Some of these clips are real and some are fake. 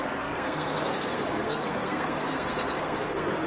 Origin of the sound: fake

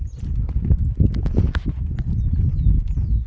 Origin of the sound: real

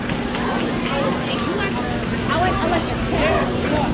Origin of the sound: real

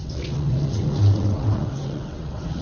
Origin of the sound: fake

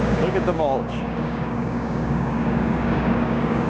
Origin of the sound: fake